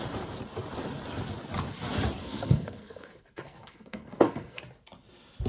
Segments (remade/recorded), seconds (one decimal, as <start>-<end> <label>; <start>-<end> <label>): 0.0-2.2 recorded; 2.2-4.6 remade; 4.6-5.5 recorded